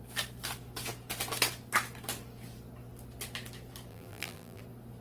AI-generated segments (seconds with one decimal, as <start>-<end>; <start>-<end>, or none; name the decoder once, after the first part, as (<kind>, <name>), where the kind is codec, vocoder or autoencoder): 3.9-4.6 (vocoder, BigVGAN v2)